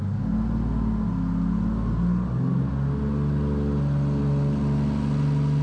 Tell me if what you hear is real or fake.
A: real